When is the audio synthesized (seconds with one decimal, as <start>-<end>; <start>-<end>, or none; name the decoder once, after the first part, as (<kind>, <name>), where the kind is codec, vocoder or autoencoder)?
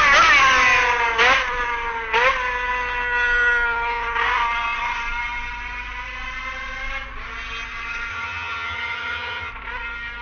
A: 8.1-9.5 (vocoder, HiFi-GAN)